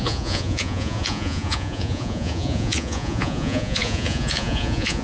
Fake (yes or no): yes